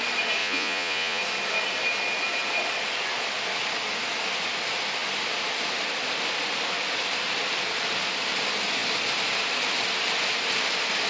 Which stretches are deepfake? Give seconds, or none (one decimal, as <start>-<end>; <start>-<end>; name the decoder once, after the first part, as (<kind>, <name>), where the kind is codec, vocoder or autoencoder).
0.4-1.2 (vocoder, Vocos)